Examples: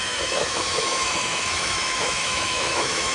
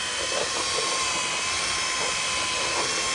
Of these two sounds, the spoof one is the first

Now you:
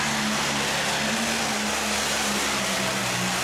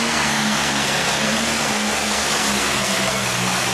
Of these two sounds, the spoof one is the second